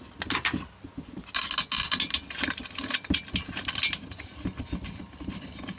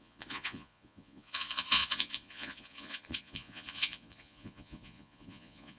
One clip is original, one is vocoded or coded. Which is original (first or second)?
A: first